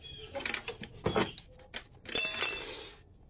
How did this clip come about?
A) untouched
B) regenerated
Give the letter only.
A